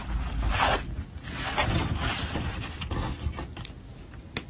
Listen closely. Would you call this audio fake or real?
real